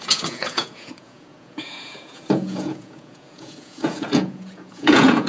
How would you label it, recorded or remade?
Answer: remade